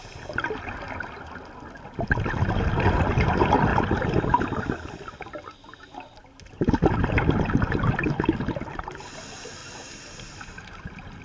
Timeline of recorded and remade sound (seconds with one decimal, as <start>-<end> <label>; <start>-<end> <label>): 0.0-11.2 recorded